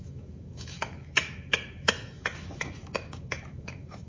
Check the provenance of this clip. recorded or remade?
remade